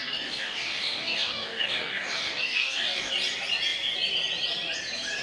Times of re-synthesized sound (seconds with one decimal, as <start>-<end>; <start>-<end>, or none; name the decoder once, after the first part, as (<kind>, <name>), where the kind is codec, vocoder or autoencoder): 0.0-3.1 (codec, DAC)